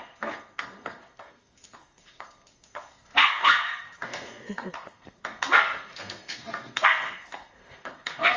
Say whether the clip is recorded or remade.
remade